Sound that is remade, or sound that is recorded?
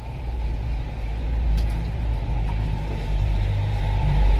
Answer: remade